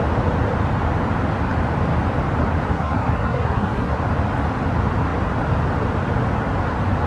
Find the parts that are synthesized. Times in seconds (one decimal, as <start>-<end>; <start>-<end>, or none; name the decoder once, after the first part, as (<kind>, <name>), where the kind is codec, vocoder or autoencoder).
2.7-4.0 (codec, SNAC)